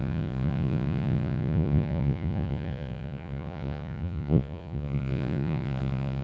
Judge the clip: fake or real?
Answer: fake